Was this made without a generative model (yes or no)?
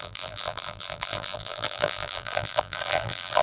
no